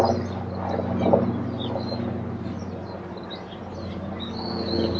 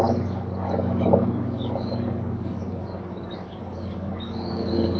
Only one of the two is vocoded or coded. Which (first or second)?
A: second